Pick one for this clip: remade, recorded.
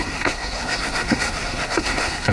remade